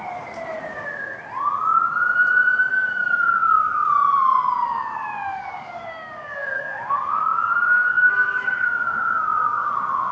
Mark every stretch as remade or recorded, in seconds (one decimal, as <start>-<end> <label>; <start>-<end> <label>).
0.0-2.7 recorded; 2.7-3.9 remade; 3.9-4.7 recorded; 4.7-9.7 remade; 9.7-10.1 recorded